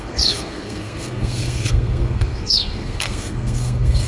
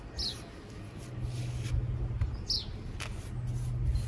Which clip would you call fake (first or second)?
first